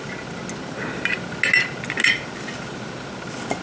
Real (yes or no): yes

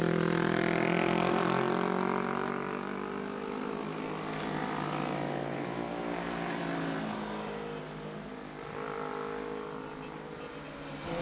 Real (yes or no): yes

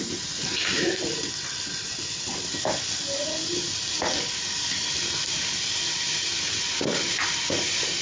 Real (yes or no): yes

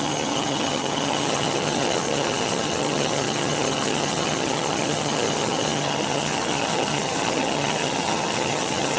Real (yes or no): no